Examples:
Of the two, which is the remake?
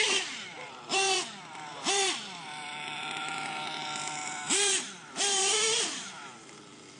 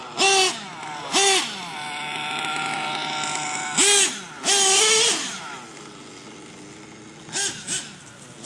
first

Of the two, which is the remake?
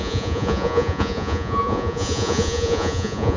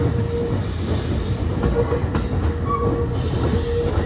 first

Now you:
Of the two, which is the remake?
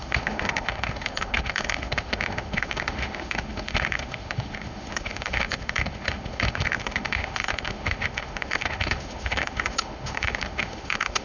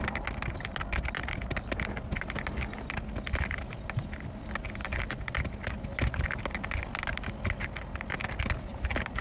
first